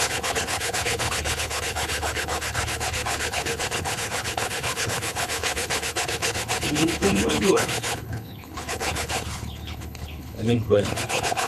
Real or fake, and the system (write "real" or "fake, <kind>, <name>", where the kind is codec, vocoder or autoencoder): fake, codec, HILCodec